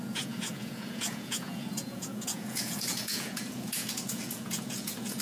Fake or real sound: fake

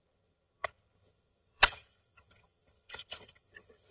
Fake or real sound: fake